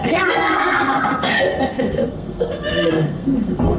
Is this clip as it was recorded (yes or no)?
no